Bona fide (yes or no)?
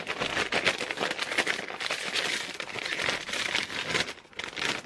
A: yes